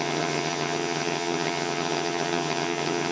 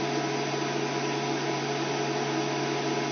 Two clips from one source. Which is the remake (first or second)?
first